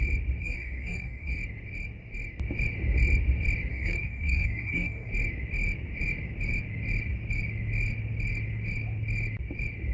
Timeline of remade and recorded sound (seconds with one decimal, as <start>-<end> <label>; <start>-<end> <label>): 0.0-0.4 recorded; 0.4-1.3 remade; 1.3-3.7 recorded; 3.7-5.1 remade; 5.1-9.9 recorded